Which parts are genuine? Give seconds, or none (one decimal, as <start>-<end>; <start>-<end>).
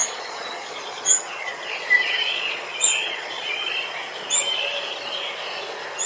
3.7-6.1